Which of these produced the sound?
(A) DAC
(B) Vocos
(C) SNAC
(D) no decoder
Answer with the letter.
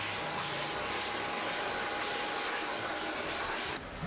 D